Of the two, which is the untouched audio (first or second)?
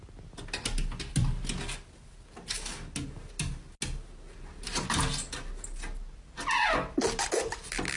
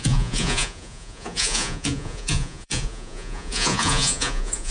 first